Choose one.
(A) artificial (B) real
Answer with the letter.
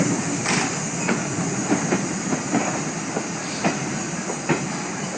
B